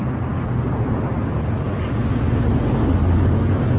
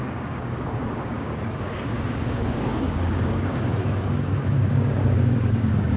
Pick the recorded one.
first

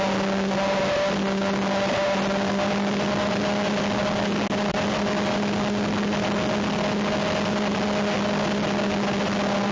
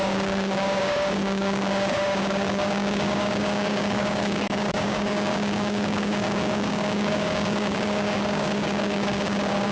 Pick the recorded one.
first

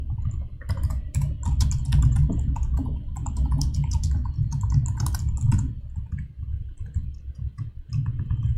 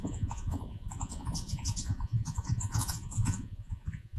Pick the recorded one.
first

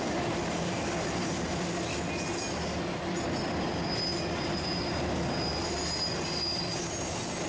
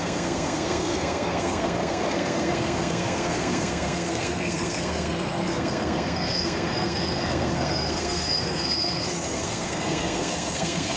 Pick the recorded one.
first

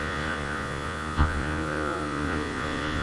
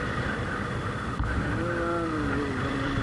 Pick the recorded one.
second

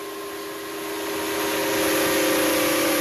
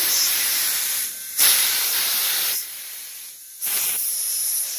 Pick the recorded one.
first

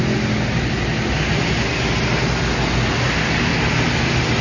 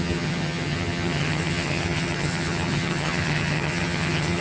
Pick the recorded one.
first